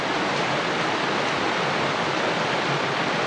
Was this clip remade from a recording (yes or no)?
no